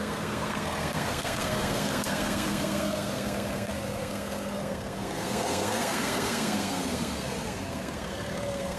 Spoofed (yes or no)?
yes